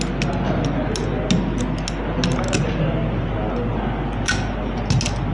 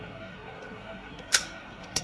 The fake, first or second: second